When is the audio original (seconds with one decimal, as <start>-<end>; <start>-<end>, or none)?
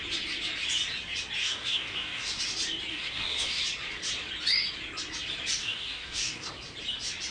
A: 0.0-1.4; 2.4-2.9; 3.6-5.6; 6.5-7.3